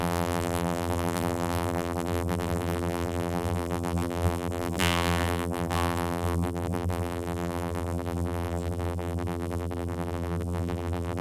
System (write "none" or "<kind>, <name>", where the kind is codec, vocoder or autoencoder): vocoder, BigVGAN v2